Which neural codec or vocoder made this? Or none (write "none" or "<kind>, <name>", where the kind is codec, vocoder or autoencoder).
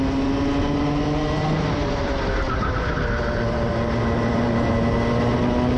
none